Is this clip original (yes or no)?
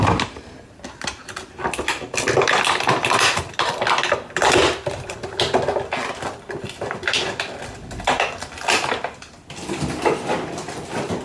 yes